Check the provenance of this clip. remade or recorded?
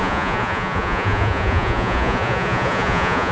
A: remade